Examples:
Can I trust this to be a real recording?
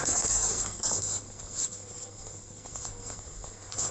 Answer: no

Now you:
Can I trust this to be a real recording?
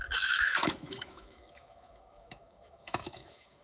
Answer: no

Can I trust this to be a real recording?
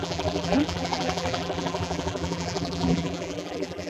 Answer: no